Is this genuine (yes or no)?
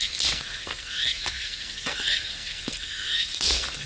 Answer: no